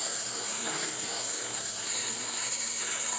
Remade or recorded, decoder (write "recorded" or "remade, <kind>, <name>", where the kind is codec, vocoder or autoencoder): remade, codec, SNAC